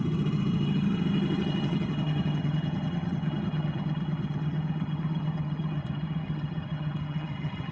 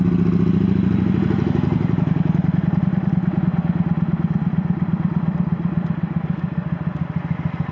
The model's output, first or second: first